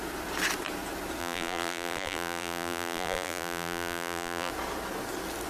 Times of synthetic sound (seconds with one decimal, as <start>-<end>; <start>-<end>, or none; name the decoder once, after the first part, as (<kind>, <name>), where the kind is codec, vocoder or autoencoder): 1.2-4.5 (vocoder, BigVGAN v2)